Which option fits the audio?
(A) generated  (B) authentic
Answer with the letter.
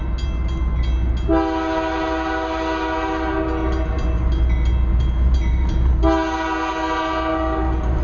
B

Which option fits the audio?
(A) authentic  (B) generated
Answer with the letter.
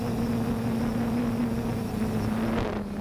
A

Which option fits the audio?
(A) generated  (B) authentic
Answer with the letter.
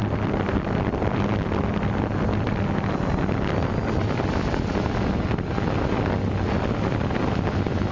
B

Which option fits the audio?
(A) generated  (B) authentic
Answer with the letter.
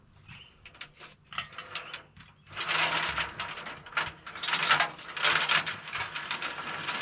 B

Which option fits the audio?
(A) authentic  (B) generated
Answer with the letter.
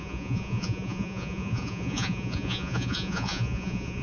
B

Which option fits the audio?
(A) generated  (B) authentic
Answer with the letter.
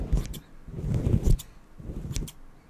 B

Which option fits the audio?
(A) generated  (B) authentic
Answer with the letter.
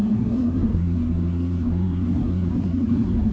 A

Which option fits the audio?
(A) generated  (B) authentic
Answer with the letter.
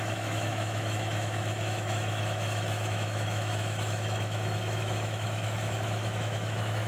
A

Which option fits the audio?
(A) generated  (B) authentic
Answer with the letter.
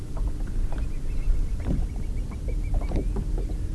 B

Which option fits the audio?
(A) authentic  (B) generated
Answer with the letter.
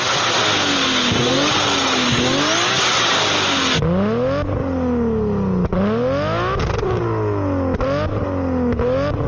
A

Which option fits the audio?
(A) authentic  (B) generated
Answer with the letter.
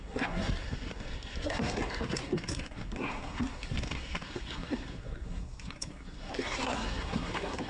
B